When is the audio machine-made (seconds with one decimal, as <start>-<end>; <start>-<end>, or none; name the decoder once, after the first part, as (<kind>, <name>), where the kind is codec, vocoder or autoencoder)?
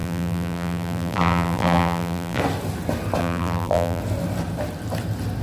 0.0-2.4 (vocoder, BigVGAN v2); 3.2-4.0